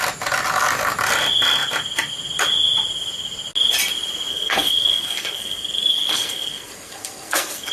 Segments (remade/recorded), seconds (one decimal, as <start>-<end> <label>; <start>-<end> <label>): 0.0-4.3 recorded; 4.3-7.7 remade